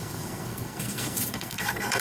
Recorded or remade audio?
remade